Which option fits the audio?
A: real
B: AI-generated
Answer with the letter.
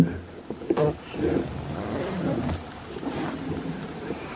A